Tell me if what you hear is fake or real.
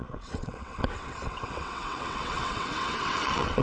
fake